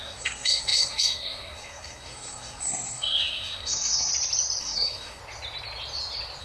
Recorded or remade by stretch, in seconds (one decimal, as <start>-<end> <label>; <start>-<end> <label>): 0.0-4.1 remade; 4.1-4.6 recorded; 4.6-5.2 remade; 5.2-6.4 recorded